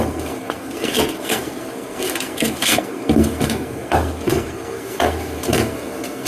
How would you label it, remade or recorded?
remade